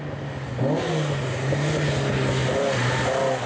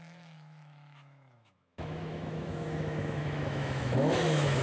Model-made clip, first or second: second